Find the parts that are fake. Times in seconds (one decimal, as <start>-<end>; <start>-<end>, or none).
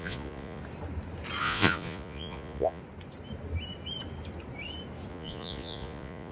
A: 0.0-0.6; 1.4-2.8; 5.1-6.3